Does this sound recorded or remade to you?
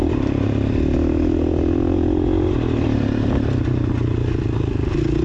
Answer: recorded